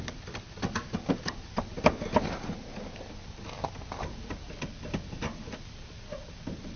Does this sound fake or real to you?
real